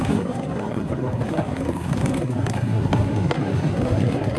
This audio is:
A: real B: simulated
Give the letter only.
B